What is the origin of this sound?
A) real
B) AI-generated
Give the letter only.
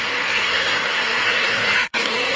B